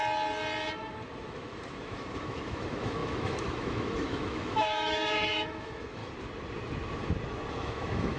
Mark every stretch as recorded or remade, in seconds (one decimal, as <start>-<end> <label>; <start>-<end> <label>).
0.0-1.2 recorded; 1.2-6.0 remade; 6.0-7.5 recorded; 7.5-8.2 remade